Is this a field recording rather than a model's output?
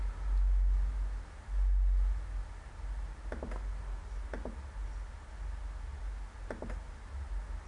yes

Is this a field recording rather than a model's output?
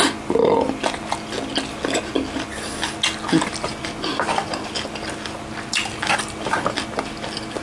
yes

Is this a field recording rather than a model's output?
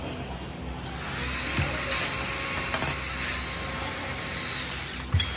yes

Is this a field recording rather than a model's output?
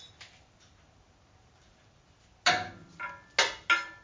yes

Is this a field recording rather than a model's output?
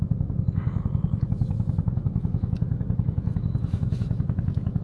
no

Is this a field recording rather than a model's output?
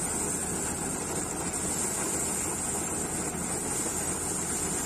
yes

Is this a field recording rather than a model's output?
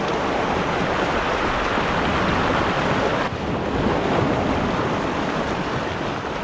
yes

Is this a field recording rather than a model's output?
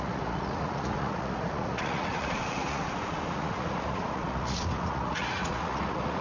no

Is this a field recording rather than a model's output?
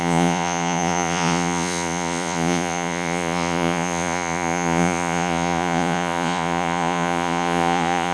no